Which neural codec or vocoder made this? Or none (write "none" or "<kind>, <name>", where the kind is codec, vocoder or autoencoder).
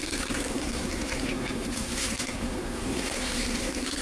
codec, SNAC